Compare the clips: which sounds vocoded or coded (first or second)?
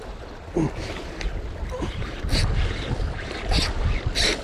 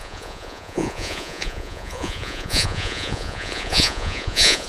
second